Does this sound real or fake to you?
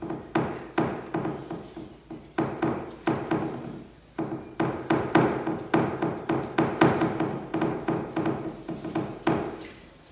real